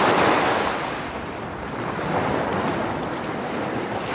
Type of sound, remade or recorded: recorded